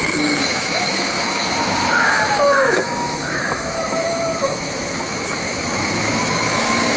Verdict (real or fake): fake